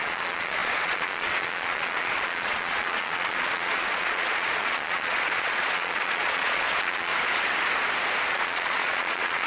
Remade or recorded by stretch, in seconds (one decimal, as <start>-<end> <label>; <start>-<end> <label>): 0.0-7.1 remade; 7.1-8.3 recorded; 8.3-9.5 remade